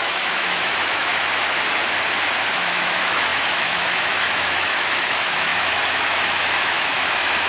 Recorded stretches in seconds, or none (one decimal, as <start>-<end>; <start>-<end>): 1.1-2.6